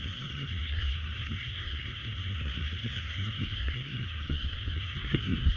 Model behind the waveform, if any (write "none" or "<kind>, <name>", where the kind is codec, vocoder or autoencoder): codec, SNAC